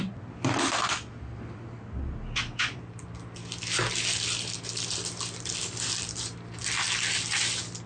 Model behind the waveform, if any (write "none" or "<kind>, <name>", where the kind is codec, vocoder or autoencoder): none